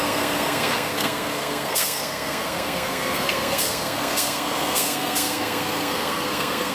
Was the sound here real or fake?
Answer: fake